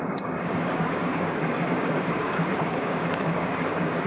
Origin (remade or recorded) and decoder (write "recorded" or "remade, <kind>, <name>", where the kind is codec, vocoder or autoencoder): remade, codec, DAC